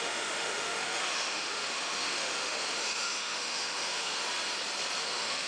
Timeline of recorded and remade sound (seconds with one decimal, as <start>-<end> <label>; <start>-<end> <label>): 0.0-4.2 remade; 4.2-5.0 recorded; 5.0-5.5 remade